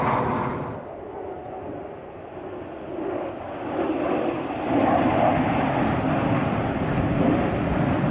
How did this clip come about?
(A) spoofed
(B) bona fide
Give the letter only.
B